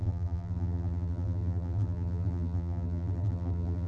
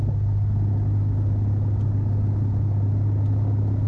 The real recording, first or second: second